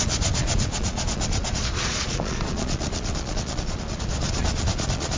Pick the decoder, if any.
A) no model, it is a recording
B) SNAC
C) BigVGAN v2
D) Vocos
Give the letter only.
D